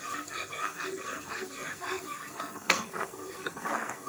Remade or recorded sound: remade